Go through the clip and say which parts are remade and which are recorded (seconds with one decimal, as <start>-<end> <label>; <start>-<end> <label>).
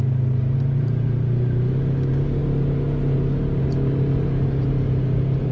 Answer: 0.0-5.5 recorded